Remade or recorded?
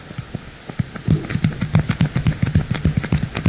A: recorded